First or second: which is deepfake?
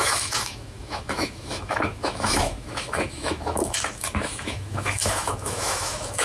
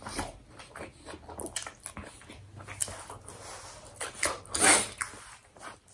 first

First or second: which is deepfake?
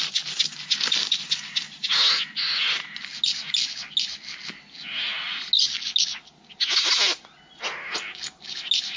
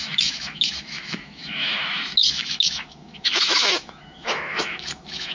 second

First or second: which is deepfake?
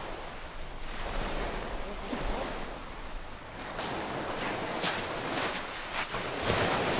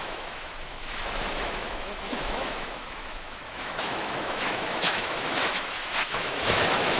second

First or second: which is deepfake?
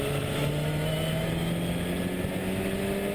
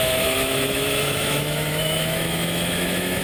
second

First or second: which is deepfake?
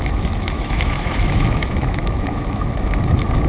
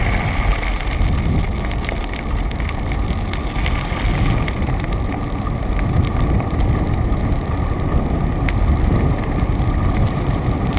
first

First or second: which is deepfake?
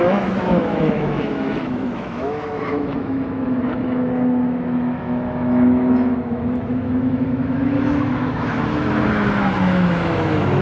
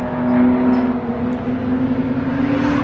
first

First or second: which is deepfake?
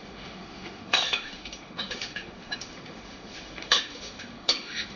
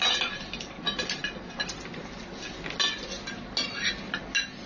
first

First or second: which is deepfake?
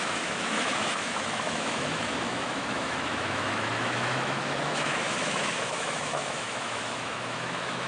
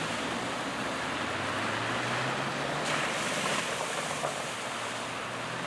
first